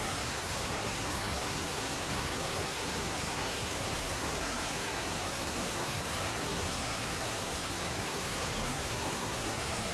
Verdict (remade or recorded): remade